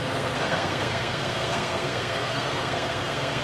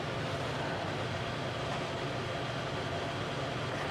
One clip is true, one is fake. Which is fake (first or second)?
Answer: first